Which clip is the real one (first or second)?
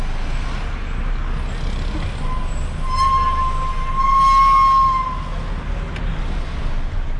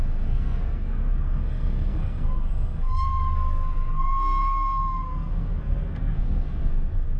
first